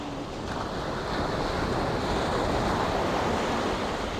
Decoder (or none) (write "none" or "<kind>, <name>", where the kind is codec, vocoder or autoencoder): none